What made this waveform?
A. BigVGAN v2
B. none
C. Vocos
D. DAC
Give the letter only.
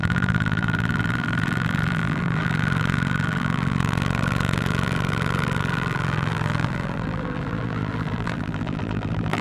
A